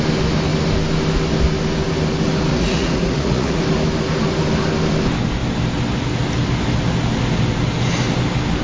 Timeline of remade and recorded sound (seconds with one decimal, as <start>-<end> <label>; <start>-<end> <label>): 0.0-2.5 recorded; 2.5-3.6 remade; 3.6-8.6 recorded